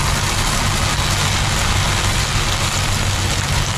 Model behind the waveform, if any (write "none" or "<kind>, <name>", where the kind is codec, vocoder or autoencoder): none